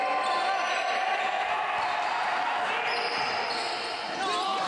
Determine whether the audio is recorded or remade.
recorded